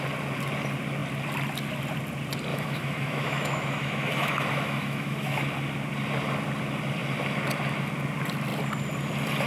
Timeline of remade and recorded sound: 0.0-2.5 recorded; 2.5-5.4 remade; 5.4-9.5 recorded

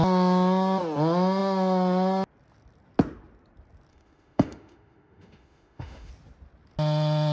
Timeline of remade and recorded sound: 0.0-3.9 recorded; 3.9-6.1 remade; 6.1-7.3 recorded

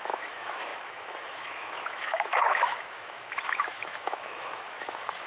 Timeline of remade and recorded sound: 0.0-5.3 remade